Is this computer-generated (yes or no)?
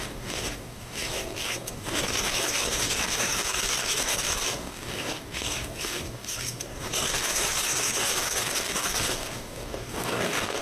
yes